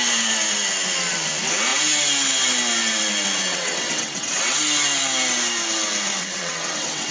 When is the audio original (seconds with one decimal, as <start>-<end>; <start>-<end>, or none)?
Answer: 0.0-3.5; 4.6-6.1